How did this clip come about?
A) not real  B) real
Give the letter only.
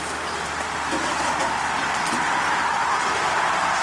A